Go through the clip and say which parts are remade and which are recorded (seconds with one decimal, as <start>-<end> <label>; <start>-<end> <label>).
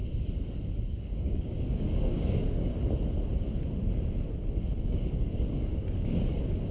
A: 0.0-0.9 recorded; 0.9-2.7 remade; 2.7-4.8 recorded; 4.8-6.7 remade